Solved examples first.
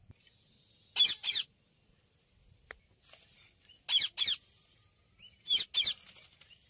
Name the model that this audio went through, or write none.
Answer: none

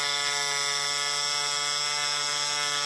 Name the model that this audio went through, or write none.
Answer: none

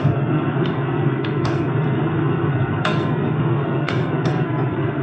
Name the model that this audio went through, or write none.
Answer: codec, SNAC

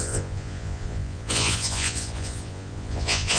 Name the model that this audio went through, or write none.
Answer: vocoder, Vocos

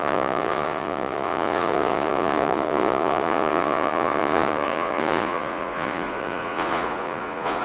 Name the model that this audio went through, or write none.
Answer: vocoder, Vocos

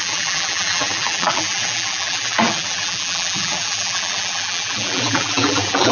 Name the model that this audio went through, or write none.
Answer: vocoder, BigVGAN v2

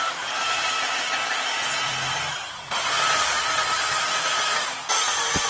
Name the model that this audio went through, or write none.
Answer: none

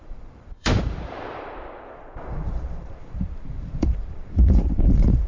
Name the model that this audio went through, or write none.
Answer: vocoder, BigVGAN v2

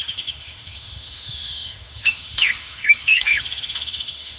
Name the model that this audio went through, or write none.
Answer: autoencoder, DAC-VAE